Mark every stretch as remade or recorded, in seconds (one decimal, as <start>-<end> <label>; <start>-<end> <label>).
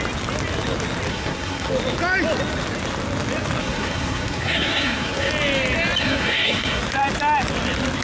0.0-1.1 recorded; 1.1-1.7 remade; 1.7-3.6 recorded; 3.6-5.3 remade; 5.3-6.0 recorded; 6.0-6.8 remade; 6.8-8.0 recorded